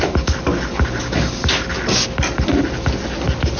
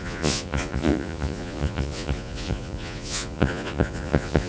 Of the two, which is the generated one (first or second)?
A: second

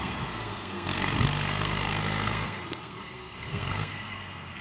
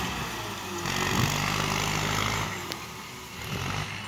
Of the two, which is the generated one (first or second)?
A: first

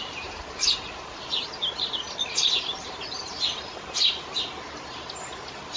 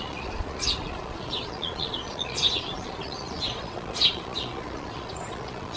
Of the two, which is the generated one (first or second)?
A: second